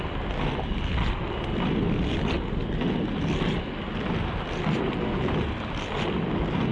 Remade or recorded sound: recorded